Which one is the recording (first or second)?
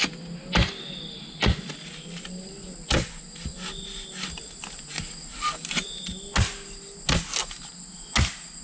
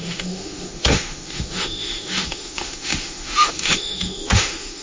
first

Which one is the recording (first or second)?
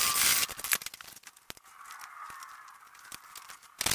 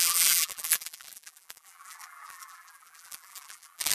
first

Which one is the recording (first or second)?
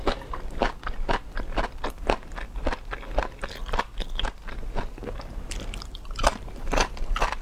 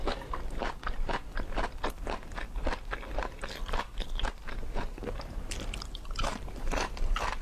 first